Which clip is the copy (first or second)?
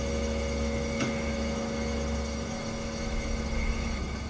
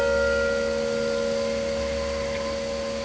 first